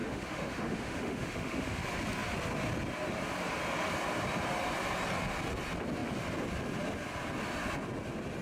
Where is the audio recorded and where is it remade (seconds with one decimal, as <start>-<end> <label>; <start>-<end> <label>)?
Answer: 0.0-1.8 remade; 1.8-8.4 recorded